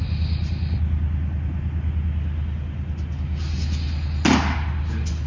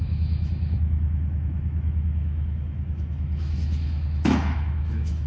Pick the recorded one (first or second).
first